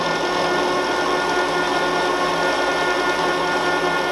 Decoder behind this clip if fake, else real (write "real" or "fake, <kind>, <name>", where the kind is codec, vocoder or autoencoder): real